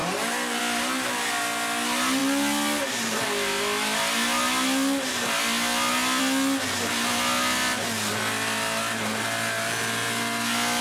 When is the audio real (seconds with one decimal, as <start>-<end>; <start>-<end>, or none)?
0.6-10.8